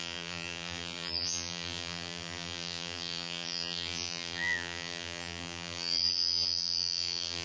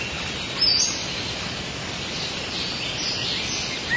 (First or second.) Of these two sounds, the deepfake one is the first